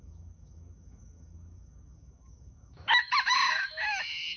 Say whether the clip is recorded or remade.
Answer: remade